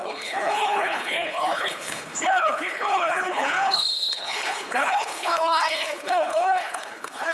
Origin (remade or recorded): remade